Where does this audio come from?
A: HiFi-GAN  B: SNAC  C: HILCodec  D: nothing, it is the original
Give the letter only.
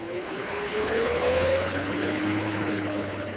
C